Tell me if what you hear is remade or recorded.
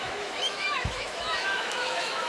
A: remade